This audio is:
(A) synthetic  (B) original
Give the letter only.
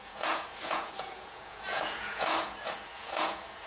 A